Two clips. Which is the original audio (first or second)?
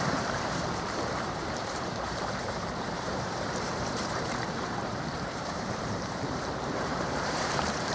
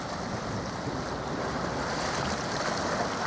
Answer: second